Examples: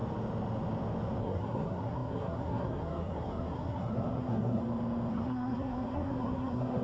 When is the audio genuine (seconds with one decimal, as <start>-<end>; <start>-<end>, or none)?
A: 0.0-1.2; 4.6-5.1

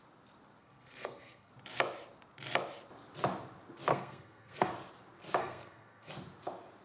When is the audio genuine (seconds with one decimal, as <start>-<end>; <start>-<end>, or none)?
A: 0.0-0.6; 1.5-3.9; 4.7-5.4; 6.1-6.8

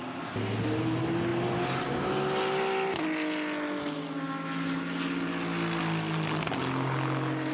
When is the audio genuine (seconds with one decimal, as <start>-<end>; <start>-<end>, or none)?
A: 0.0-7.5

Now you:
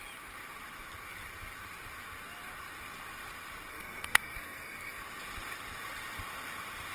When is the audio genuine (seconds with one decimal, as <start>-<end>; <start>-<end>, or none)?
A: 0.0-3.7; 5.0-6.9

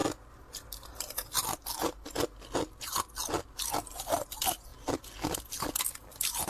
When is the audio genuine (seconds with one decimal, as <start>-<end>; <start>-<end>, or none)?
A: 0.0-6.5

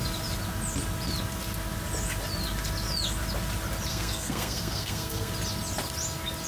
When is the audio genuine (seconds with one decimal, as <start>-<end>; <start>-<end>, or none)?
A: 0.0-3.9; 5.3-6.5